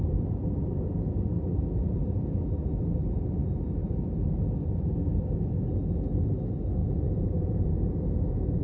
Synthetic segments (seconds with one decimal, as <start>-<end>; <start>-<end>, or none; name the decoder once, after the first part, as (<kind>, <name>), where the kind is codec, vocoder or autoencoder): 6.8-8.6 (vocoder, Vocos)